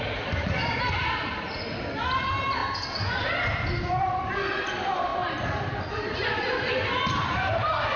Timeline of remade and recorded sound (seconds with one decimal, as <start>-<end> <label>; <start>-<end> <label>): 0.0-2.6 remade; 2.6-3.4 recorded; 3.4-5.1 remade; 5.1-5.7 recorded; 5.7-8.0 remade